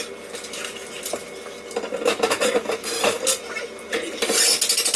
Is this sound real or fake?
real